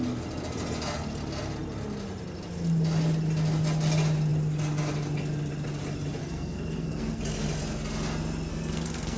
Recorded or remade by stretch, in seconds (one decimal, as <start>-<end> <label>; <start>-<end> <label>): 0.0-6.2 recorded; 6.2-7.2 remade; 7.2-8.5 recorded; 8.5-9.2 remade